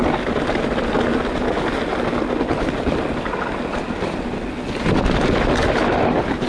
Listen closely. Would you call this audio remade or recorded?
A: recorded